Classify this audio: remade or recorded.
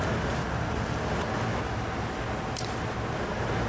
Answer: recorded